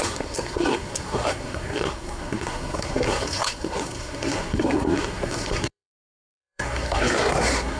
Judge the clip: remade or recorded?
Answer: remade